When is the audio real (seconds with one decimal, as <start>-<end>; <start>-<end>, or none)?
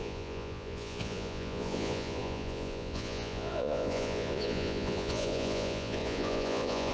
none